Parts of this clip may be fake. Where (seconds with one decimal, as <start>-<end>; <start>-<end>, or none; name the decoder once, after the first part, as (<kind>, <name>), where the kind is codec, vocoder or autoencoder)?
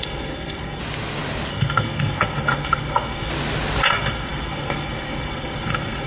0.0-0.8 (codec, SNAC); 1.5-3.3; 3.9-6.1